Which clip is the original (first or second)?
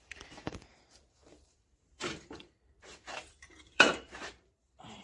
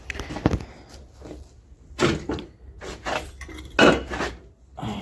second